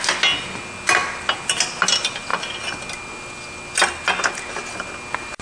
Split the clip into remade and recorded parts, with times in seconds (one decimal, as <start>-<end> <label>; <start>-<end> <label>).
0.0-5.4 recorded